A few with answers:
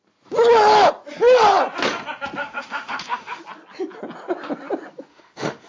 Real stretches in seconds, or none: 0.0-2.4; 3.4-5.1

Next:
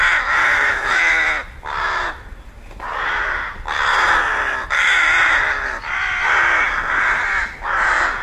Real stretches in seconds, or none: 0.0-0.4; 1.1-8.2